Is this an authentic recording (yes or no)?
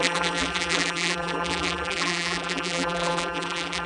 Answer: no